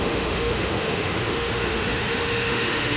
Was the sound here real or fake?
fake